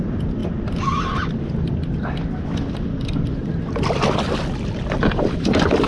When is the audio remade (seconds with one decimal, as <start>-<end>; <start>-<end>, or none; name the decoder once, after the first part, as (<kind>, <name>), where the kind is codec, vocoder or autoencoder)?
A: 0.0-0.4 (vocoder, BigVGAN v2); 2.7-3.4; 5.0-5.9